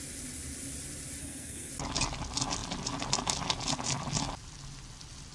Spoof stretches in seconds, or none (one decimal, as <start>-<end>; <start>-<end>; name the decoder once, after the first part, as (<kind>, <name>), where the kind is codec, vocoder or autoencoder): 1.2-1.7 (codec, SNAC)